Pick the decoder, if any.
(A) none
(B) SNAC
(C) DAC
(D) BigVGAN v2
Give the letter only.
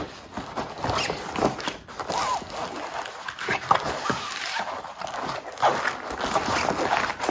A